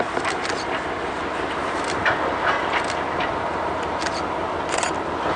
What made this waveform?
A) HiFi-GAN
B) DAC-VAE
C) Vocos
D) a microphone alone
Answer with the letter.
D